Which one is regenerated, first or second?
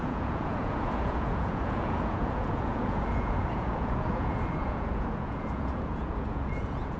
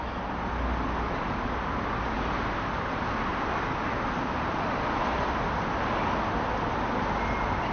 first